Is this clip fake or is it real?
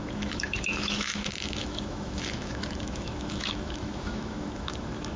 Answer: fake